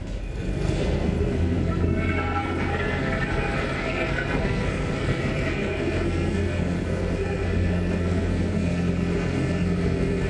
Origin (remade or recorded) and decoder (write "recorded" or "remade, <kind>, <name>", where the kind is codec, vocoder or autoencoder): remade, codec, SNAC